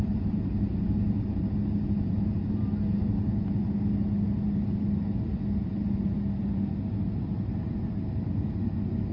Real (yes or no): yes